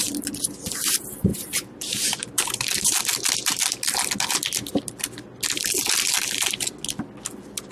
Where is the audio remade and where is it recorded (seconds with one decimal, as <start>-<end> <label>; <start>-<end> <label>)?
0.0-1.3 recorded; 1.3-3.0 remade; 3.0-7.7 recorded